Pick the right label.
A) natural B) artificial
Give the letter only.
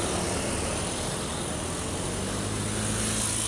A